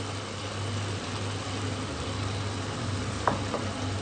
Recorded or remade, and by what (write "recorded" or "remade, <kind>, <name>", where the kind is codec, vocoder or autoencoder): recorded